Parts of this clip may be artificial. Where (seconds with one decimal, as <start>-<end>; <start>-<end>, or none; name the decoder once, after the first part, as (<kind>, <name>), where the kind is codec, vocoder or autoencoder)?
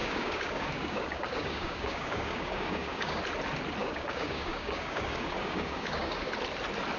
0.0-3.2 (codec, DAC); 3.8-6.3